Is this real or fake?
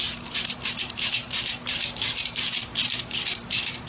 fake